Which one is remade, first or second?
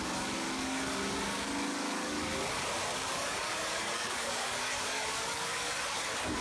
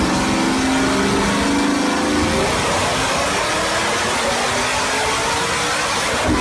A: first